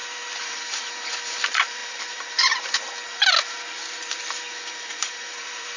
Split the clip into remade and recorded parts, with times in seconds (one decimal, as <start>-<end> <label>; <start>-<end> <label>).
0.0-5.8 remade

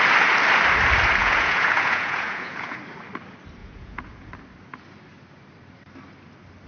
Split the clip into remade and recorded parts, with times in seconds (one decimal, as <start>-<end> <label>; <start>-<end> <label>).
0.0-1.2 recorded; 1.2-2.8 remade; 2.8-3.6 recorded; 3.6-4.3 remade; 4.3-6.7 recorded

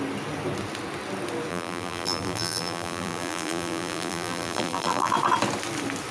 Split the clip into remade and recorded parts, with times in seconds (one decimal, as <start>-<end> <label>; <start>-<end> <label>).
0.0-1.5 recorded; 1.5-5.1 remade; 5.1-6.1 recorded

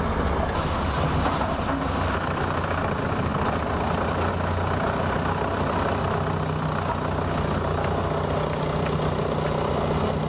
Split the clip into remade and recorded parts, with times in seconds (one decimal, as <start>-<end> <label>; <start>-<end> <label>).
0.0-10.3 recorded

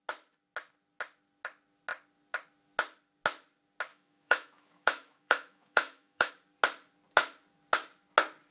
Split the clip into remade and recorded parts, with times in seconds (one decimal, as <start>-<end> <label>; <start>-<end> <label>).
0.0-3.9 recorded; 3.9-6.3 remade; 6.3-8.5 recorded